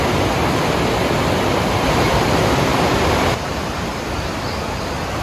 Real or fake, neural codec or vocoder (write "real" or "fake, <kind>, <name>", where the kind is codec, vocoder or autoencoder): real